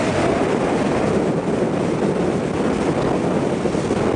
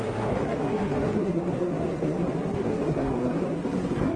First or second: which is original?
first